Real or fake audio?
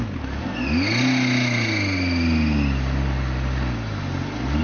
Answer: real